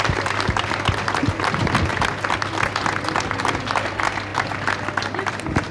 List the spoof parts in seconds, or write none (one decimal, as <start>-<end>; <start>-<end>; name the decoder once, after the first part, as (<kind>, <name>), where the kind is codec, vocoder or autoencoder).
none